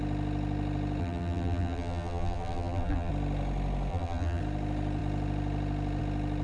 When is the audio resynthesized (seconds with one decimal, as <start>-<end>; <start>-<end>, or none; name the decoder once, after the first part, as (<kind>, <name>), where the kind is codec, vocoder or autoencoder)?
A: 1.0-3.1 (vocoder, BigVGAN v2); 3.9-4.4